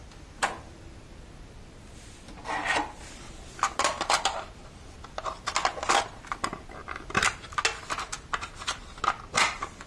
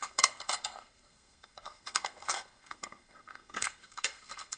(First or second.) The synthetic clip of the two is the second